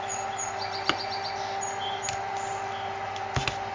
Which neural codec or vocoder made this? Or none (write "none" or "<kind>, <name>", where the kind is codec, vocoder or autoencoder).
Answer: none